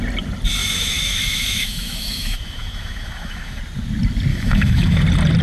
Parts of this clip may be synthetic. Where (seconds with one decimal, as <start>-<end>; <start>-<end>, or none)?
0.6-3.6; 4.3-5.0